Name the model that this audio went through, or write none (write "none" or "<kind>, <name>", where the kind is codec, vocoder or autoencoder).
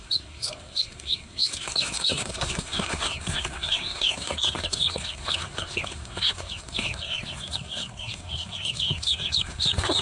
codec, SNAC